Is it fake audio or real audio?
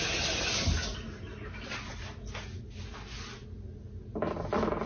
real